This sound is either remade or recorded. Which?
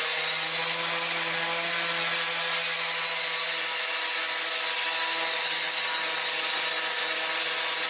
recorded